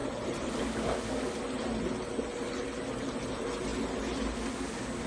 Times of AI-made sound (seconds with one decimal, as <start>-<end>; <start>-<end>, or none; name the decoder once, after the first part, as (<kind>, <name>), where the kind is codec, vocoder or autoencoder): 0.0-1.4 (vocoder, BigVGAN v2)